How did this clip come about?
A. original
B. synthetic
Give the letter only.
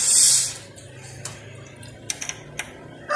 A